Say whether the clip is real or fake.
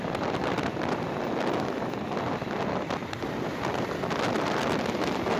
real